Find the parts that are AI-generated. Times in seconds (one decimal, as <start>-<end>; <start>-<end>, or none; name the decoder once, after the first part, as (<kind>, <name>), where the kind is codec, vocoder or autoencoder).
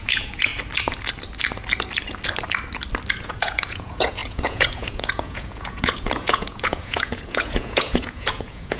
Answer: 0.0-0.5 (vocoder, Vocos); 3.2-8.8